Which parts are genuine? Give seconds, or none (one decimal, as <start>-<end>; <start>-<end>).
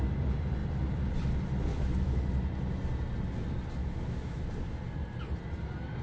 0.0-1.7; 2.2-3.8; 4.4-6.0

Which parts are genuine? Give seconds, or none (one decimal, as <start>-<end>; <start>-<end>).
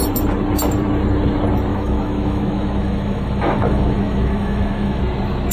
0.0-1.7; 5.0-5.5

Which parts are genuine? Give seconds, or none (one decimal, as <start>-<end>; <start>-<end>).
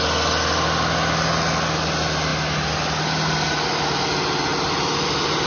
0.0-5.5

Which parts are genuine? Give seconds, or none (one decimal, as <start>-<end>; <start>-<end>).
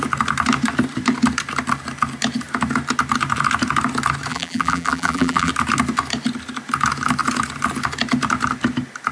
0.0-4.3; 5.5-9.1